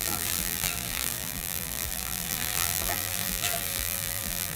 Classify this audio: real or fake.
fake